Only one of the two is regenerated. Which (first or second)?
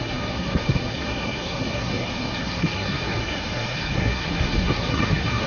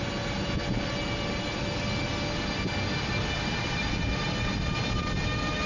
first